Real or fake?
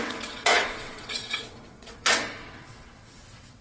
fake